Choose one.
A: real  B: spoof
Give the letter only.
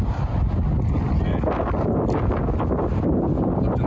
A